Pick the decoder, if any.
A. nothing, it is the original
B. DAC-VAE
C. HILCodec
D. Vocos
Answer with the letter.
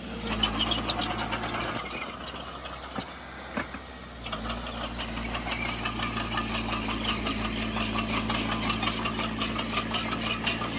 A